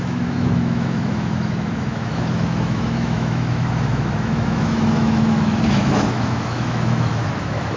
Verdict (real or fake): fake